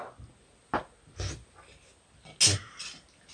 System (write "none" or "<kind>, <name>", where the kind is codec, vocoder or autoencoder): none